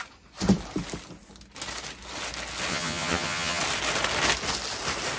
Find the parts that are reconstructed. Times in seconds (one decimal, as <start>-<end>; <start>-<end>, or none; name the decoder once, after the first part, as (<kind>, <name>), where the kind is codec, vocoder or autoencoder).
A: 2.7-3.6 (vocoder, HiFi-GAN)